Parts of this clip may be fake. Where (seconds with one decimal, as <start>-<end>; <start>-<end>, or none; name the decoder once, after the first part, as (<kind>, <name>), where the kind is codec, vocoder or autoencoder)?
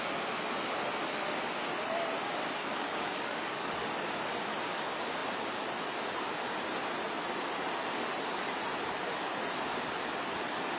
2.6-3.7 (codec, DAC)